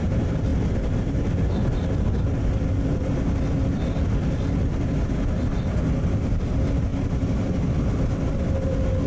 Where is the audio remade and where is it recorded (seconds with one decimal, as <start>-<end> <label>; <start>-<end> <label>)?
0.0-9.1 recorded